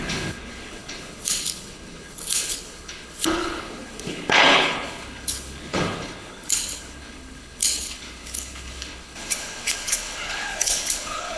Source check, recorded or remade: remade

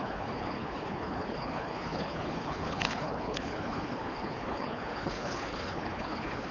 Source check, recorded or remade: remade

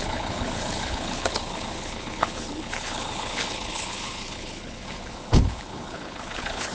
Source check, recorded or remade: remade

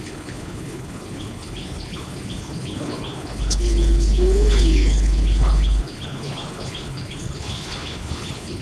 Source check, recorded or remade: remade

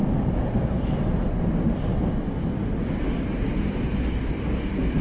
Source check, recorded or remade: recorded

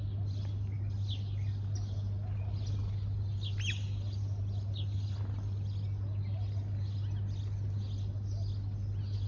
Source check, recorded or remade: recorded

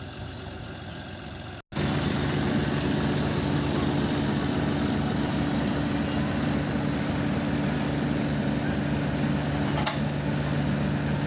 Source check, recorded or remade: recorded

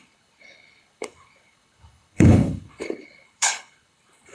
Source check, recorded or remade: remade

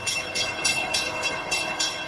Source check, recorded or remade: remade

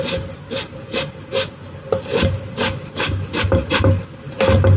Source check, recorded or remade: recorded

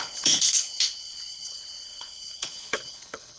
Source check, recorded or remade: remade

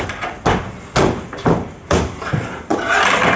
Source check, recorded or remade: recorded